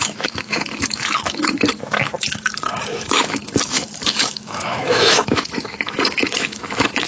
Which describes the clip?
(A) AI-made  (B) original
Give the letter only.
A